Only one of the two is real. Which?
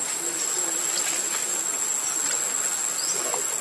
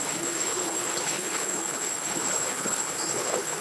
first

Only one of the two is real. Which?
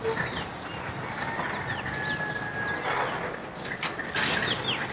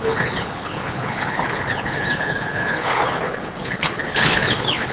first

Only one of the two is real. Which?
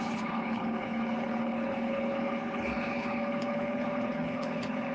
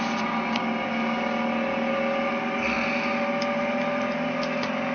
second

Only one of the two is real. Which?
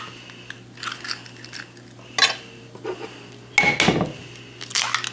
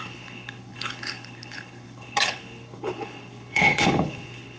first